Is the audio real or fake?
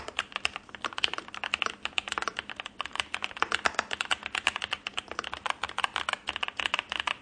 fake